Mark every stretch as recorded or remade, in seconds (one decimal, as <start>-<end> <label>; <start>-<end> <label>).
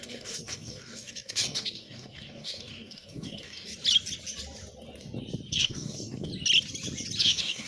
0.0-3.7 remade; 3.7-5.5 recorded; 5.5-6.3 remade; 6.3-7.2 recorded; 7.2-7.7 remade